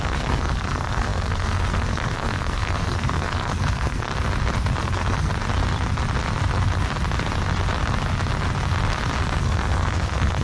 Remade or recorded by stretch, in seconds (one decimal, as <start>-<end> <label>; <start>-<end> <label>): 0.0-4.1 remade; 4.1-4.8 recorded; 4.8-5.3 remade; 5.3-9.4 recorded; 9.4-10.4 remade